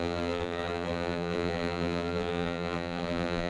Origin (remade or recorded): remade